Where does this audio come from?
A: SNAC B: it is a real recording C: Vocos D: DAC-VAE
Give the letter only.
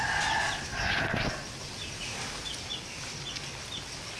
B